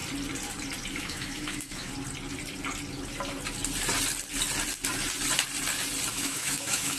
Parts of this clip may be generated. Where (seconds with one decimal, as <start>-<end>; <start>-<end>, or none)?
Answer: 1.0-1.9; 6.1-7.0